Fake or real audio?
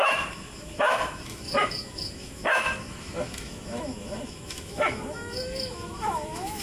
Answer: fake